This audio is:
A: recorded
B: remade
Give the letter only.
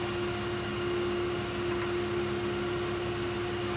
A